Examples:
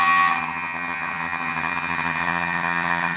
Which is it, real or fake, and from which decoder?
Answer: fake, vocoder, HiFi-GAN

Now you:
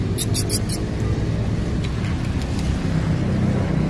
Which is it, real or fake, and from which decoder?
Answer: real